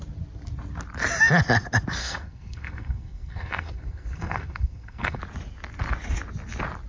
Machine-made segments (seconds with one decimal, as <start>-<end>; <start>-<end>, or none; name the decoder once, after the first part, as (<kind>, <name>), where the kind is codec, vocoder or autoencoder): 2.0-5.2 (codec, SNAC)